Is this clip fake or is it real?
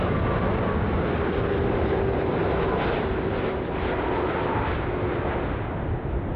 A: real